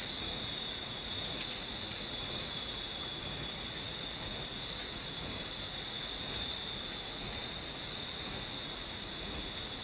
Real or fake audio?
fake